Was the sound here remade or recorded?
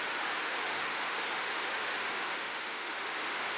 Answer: remade